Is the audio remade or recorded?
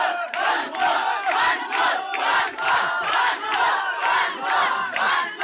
remade